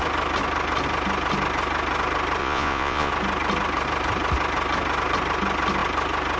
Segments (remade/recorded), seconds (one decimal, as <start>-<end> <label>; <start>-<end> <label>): 0.0-2.4 recorded; 2.4-3.1 remade; 3.1-6.4 recorded